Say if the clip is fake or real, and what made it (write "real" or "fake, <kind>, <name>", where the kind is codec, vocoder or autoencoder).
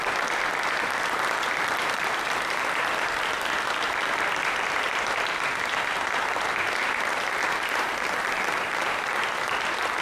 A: fake, vocoder, BigVGAN v2